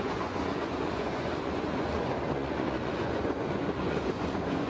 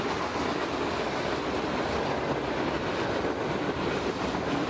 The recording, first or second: second